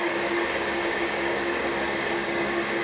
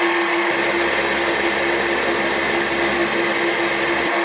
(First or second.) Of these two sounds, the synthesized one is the first